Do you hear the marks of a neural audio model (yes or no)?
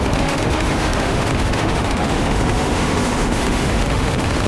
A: yes